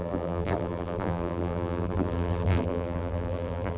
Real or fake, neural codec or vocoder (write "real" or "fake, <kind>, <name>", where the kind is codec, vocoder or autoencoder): fake, vocoder, BigVGAN v2